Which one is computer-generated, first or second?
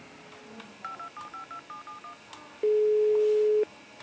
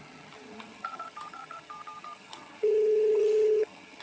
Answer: second